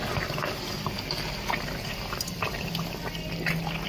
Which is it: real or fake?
real